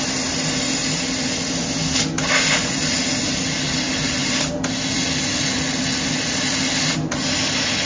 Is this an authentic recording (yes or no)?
yes